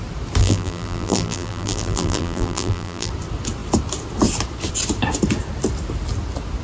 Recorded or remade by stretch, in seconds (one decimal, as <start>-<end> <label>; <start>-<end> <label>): 0.0-0.4 recorded; 0.4-3.1 remade; 3.1-6.6 recorded